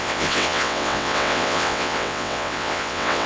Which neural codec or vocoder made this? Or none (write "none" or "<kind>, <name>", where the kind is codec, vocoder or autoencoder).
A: vocoder, WaveNeXt